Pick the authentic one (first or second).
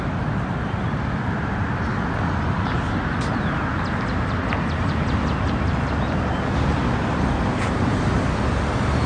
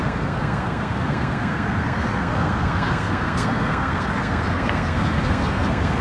first